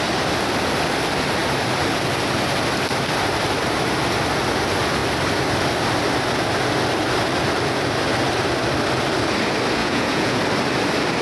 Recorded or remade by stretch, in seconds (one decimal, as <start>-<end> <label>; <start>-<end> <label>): 0.0-9.8 recorded; 9.8-10.4 remade; 10.4-11.2 recorded